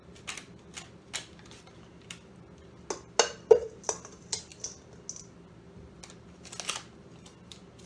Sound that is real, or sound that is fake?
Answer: real